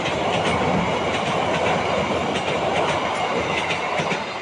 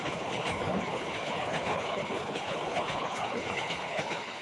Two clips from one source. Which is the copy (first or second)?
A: second